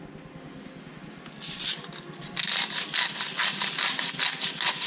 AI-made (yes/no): no